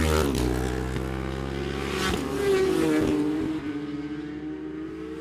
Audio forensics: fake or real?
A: real